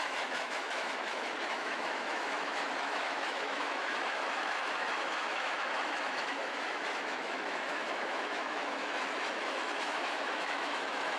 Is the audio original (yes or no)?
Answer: no